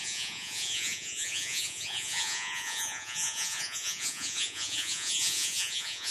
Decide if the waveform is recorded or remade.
remade